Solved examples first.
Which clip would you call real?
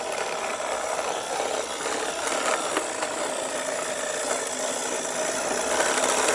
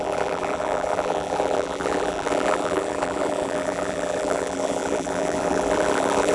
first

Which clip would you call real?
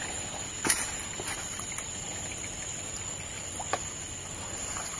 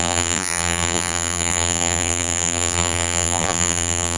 first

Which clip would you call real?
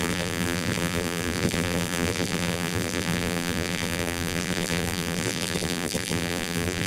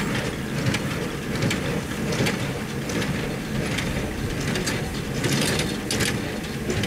second